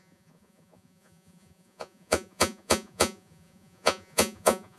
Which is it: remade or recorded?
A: remade